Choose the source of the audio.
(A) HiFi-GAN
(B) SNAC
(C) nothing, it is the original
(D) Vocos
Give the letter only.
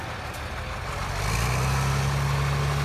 C